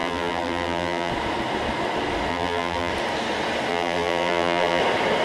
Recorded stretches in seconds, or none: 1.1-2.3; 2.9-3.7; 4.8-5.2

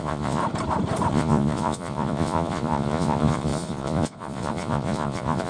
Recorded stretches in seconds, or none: 0.4-1.1

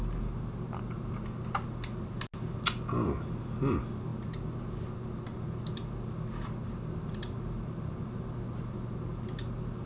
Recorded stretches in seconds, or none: 0.0-9.9

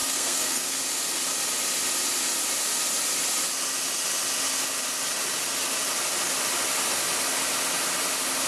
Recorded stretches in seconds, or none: 0.8-8.5

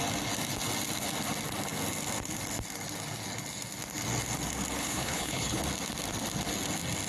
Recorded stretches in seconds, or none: 0.0-4.8; 5.6-7.1

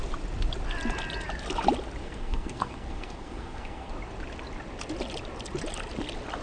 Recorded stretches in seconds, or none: 0.0-2.0; 3.9-6.4

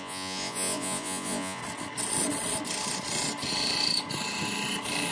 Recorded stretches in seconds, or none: 1.6-5.1